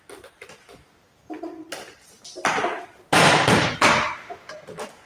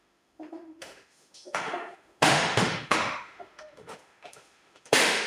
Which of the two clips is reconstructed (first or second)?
second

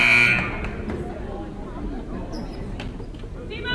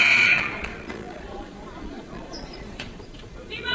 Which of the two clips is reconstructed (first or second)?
second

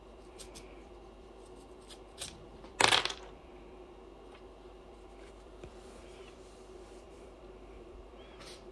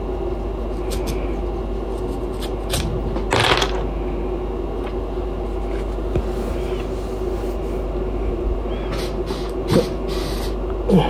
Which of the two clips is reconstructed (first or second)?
first